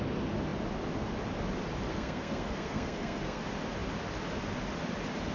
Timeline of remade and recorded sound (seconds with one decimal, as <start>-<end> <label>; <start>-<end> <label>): 0.0-1.9 recorded; 1.9-3.4 remade; 3.4-5.3 recorded